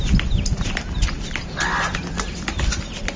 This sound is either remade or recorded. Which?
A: recorded